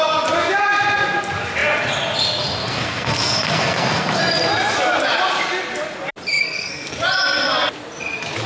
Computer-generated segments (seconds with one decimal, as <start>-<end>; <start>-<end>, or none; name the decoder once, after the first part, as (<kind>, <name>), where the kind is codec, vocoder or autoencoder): 2.6-4.2 (codec, SNAC); 6.3-6.9